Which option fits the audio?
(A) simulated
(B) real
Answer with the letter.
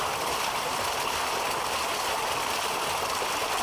B